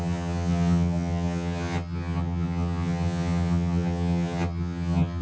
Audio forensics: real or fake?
fake